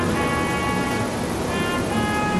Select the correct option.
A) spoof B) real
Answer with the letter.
B